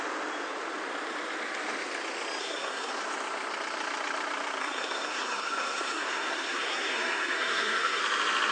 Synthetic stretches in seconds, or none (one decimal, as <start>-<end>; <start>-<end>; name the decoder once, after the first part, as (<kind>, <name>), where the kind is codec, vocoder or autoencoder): 2.4-2.9 (codec, SNAC); 4.6-8.0